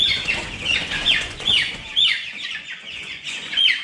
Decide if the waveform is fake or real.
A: fake